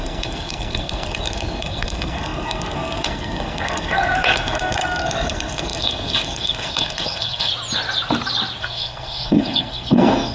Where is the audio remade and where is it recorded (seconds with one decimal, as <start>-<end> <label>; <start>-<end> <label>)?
0.0-7.5 remade; 7.5-8.6 recorded; 8.6-10.3 remade